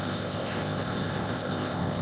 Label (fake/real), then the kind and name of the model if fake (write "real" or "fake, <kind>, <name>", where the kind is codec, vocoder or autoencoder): fake, codec, ZipCodec